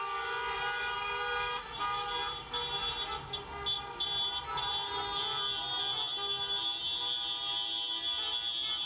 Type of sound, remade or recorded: recorded